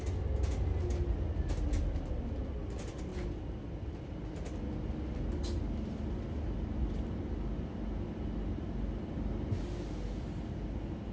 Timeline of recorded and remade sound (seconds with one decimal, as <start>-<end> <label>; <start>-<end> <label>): 0.0-11.1 recorded